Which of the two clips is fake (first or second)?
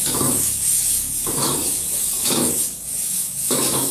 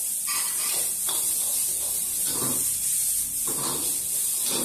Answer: first